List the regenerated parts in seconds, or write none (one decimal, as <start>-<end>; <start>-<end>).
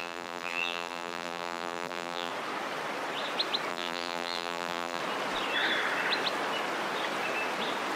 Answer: 0.0-2.3; 3.7-5.0